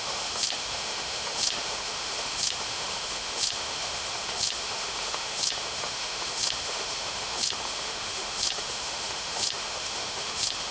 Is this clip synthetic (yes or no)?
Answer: yes